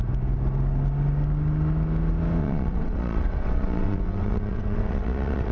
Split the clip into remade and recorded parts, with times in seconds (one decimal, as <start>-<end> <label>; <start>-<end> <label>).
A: 0.0-2.4 recorded; 2.4-5.5 remade